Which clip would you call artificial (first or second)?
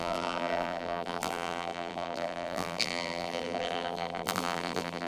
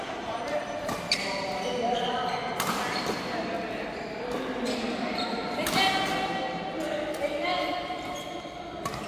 first